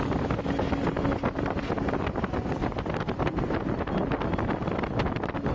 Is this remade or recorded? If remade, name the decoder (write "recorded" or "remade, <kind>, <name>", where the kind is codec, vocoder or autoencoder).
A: recorded